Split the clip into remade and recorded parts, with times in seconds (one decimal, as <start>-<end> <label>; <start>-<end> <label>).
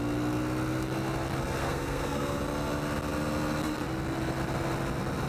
0.0-1.6 recorded; 1.6-2.4 remade; 2.4-5.3 recorded